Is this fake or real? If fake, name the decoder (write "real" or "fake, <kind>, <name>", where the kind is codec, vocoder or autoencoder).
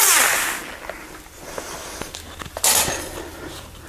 real